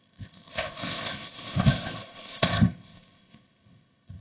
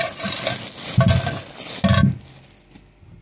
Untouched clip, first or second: second